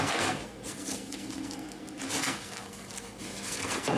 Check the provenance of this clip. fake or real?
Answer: fake